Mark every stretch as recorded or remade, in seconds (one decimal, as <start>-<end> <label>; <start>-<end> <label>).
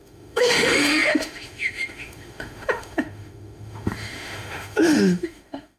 0.0-5.8 remade